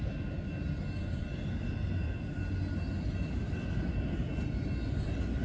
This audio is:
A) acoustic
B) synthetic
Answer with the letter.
A